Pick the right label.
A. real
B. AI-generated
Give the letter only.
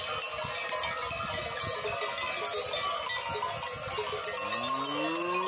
A